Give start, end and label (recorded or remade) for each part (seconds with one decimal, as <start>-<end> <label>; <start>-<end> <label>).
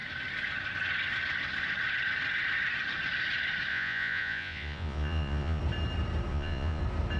0.0-3.7 recorded; 3.7-5.6 remade; 5.6-6.3 recorded; 6.3-6.8 remade; 6.8-7.2 recorded